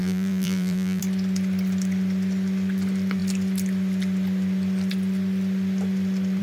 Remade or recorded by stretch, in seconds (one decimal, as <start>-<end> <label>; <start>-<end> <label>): 0.0-1.0 remade; 1.0-6.4 recorded